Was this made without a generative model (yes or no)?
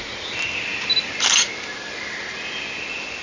yes